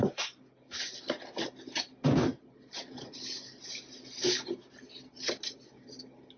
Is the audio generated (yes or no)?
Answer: no